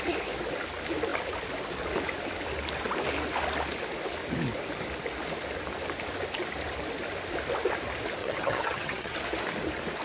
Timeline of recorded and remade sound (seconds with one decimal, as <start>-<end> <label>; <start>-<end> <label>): 0.0-8.2 recorded; 8.2-9.2 remade; 9.2-10.0 recorded